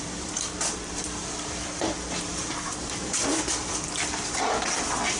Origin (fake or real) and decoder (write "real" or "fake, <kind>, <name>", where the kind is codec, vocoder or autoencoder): fake, vocoder, BigVGAN v2